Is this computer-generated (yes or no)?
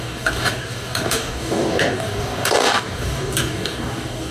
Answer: yes